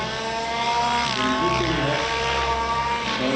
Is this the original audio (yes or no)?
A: yes